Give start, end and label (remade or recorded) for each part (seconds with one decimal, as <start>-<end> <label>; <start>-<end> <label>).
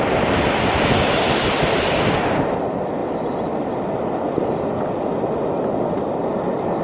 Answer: 0.0-6.8 recorded